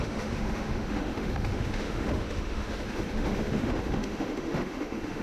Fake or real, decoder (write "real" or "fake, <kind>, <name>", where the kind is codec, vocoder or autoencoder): fake, autoencoder, DAC-VAE